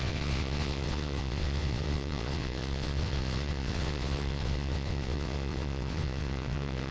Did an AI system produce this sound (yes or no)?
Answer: yes